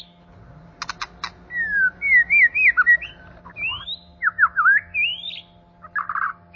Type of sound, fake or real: real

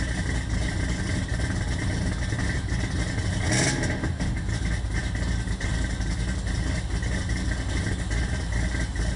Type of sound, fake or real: real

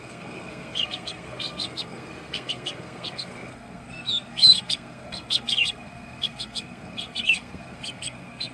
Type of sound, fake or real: fake